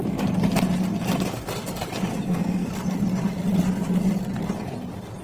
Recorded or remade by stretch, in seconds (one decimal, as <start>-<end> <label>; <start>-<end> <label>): 0.0-2.1 recorded; 2.1-2.7 remade; 2.7-5.2 recorded